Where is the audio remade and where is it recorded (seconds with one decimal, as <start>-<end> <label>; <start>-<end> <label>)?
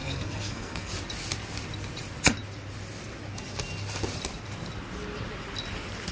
0.0-0.9 remade; 0.9-6.1 recorded